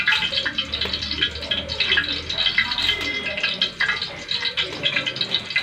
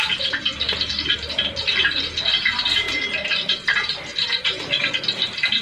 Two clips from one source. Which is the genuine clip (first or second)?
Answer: first